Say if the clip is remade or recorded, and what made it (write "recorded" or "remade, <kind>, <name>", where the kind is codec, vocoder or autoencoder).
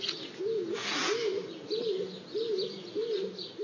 recorded